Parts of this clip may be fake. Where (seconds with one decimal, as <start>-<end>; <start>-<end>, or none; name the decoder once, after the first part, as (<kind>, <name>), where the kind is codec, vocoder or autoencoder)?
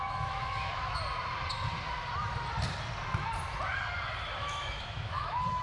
0.0-1.0 (autoencoder, DAC-VAE); 4.4-5.6